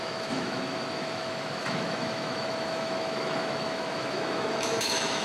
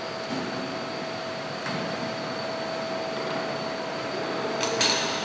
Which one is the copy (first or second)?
first